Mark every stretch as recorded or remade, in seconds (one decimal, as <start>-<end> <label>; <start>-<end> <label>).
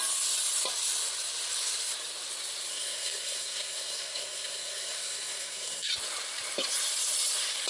0.0-2.7 recorded; 2.7-5.9 remade; 5.9-7.7 recorded